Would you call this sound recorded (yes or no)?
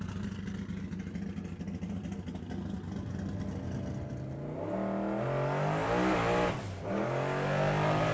yes